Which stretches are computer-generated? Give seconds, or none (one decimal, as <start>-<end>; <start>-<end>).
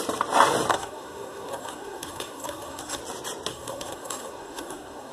0.7-3.0; 3.5-5.1